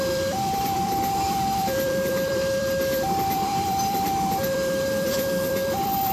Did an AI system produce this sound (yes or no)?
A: yes